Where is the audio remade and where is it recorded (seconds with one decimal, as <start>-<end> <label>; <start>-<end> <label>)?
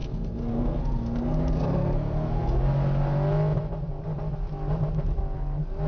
0.0-2.6 remade; 2.6-5.9 recorded